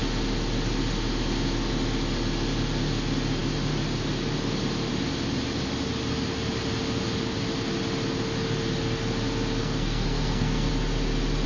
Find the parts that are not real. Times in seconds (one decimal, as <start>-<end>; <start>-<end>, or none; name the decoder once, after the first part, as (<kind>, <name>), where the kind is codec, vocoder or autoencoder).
9.6-10.7 (codec, SNAC)